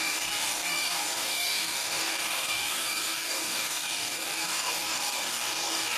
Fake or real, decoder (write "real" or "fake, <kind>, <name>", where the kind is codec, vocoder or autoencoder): fake, codec, DAC